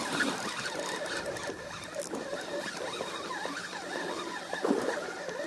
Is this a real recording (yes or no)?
yes